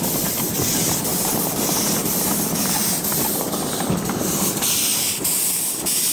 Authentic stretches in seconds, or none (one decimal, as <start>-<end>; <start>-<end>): 0.0-6.1